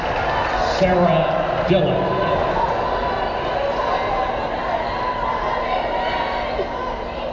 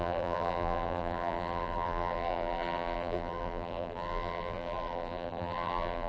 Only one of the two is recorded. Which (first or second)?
first